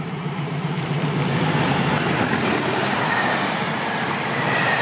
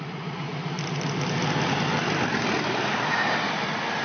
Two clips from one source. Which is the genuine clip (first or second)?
second